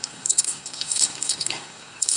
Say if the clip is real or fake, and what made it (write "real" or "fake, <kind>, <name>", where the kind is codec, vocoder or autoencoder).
fake, codec, SNAC